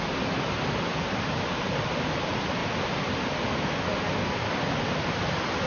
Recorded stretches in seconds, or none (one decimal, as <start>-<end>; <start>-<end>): 0.0-5.7

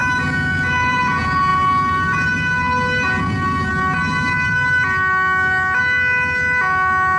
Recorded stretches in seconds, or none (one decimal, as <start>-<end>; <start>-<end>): 1.0-7.2

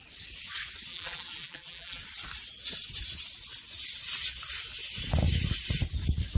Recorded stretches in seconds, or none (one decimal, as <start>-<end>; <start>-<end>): 0.0-0.9; 2.0-6.4

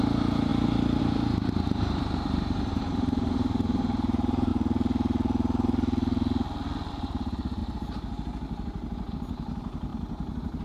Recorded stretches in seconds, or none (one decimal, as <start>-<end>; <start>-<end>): 0.5-1.0; 4.5-6.9

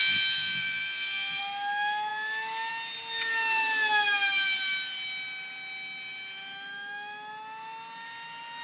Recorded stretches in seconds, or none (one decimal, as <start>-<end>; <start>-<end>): 1.4-8.6

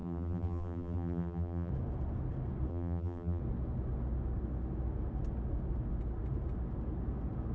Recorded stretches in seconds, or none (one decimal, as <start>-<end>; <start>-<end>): 1.7-2.7; 3.4-7.5

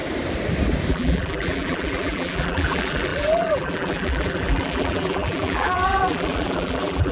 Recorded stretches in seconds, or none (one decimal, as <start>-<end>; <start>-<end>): 0.0-0.9